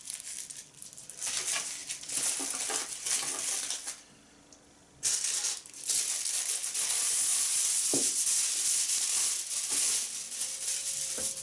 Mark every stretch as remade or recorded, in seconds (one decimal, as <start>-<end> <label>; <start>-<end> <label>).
0.0-7.3 recorded; 7.3-8.4 remade; 8.4-10.8 recorded; 10.8-11.4 remade